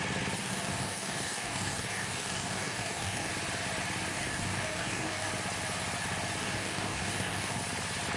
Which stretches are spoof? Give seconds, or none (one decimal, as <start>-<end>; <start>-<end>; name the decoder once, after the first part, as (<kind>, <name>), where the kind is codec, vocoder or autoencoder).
0.4-3.3 (codec, DAC); 4.1-5.3; 6.4-7.6

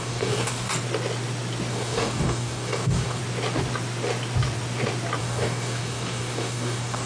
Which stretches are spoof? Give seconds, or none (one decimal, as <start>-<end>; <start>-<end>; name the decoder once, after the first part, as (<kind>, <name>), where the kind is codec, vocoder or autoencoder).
0.0-0.7 (codec, DAC); 1.7-3.2; 5.2-7.1

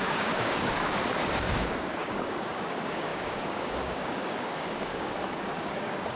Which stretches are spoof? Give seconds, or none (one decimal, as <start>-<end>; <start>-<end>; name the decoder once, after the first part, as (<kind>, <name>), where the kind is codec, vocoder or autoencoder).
0.0-6.2 (codec, DAC)

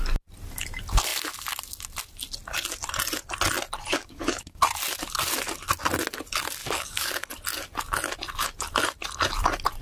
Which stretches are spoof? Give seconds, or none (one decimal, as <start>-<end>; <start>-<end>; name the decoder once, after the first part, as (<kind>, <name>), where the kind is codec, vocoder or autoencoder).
3.9-4.6 (codec, DAC); 6.6-7.1

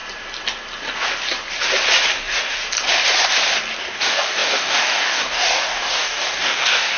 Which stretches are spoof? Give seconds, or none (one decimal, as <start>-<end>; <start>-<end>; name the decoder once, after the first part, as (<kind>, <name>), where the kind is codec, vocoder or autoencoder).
2.1-2.6 (codec, DAC); 3.8-7.0

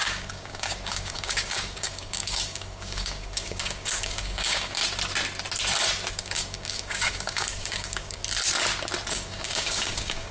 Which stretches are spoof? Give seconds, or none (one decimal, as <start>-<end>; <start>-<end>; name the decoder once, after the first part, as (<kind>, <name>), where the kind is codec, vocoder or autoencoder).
0.0-4.8 (codec, DAC); 6.1-8.2; 9.1-10.3

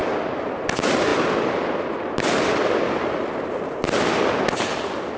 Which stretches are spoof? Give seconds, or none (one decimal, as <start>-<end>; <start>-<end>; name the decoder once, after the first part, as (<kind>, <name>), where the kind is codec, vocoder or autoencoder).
none

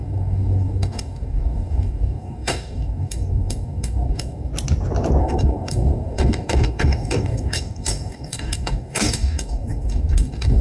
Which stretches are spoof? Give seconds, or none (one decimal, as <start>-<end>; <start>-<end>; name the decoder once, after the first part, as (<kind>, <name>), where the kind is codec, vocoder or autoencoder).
0.0-4.5 (codec, DAC); 5.2-10.6